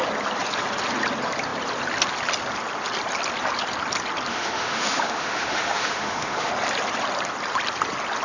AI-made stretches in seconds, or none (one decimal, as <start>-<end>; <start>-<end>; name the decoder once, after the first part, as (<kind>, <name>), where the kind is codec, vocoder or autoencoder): 4.3-6.5 (autoencoder, DAC-VAE)